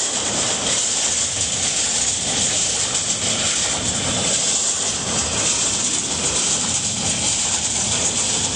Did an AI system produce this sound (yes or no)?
yes